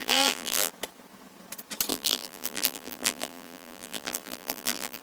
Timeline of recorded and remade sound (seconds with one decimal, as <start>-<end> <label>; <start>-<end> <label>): 0.0-0.7 remade; 0.7-1.9 recorded; 1.9-5.0 remade